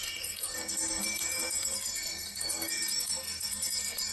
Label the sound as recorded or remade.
remade